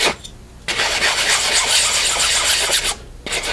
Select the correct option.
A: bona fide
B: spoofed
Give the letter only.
A